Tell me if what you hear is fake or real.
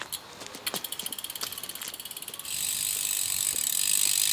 real